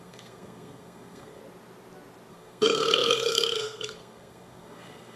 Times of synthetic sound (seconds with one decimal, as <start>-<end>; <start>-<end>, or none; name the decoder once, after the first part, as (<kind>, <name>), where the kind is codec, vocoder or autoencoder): 0.0-1.4 (codec, SNAC); 2.3-5.2